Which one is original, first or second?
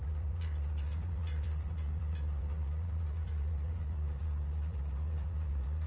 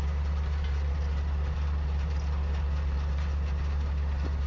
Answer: second